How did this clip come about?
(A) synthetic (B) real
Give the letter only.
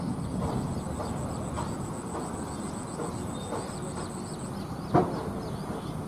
B